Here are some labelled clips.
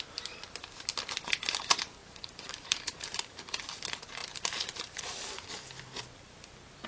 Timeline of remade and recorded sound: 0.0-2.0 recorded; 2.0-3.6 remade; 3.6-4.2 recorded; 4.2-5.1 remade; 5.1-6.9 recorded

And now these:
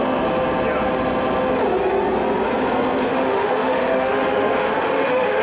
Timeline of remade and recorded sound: 0.0-3.1 recorded; 3.1-5.4 remade

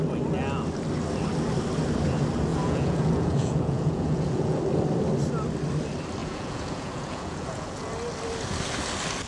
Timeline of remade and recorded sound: 0.0-2.5 recorded; 2.5-4.6 remade; 4.6-6.2 recorded; 6.2-7.9 remade; 7.9-9.3 recorded

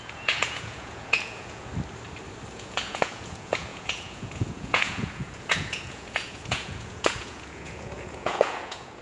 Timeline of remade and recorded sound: 0.0-1.7 remade; 1.7-2.5 recorded; 2.5-9.0 remade